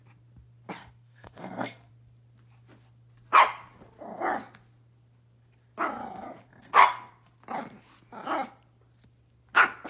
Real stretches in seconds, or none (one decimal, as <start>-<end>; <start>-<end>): 0.0-0.8; 1.9-6.5; 7.1-9.9